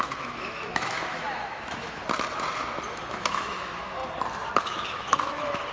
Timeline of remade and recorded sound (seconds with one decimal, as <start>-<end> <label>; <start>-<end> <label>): 0.0-2.0 remade; 2.0-3.0 recorded; 3.0-4.0 remade; 4.0-4.6 recorded; 4.6-5.7 remade